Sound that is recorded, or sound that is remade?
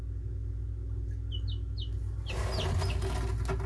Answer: recorded